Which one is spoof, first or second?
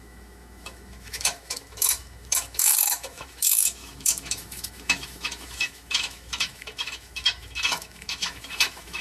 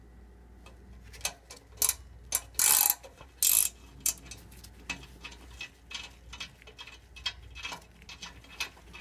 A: first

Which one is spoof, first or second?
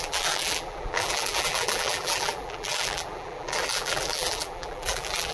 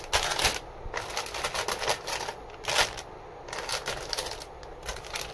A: first